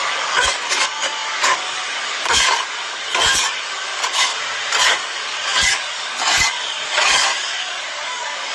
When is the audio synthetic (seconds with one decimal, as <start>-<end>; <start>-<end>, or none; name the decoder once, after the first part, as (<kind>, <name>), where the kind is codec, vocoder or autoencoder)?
0.0-4.3 (codec, DAC); 4.9-8.5